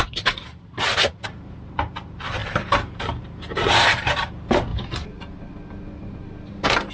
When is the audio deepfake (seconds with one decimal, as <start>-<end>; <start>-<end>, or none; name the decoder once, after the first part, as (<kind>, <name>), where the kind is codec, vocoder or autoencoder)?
0.0-4.7 (vocoder, BigVGAN v2)